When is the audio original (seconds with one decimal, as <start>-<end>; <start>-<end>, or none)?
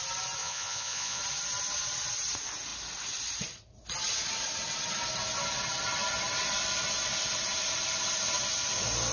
0.0-0.4; 1.2-9.1